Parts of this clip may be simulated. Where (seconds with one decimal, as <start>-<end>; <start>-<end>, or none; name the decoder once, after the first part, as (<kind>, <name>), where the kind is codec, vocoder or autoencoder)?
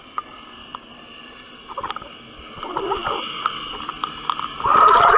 none